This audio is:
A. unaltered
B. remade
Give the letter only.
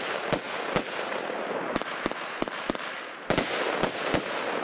A